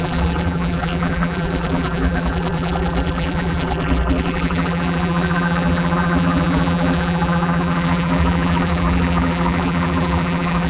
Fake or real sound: fake